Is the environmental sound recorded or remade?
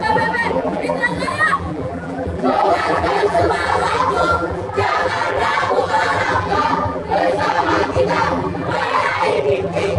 remade